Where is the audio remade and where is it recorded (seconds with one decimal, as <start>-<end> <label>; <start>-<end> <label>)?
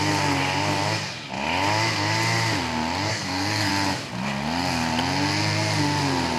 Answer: 0.0-3.1 recorded; 3.1-3.7 remade; 3.7-6.4 recorded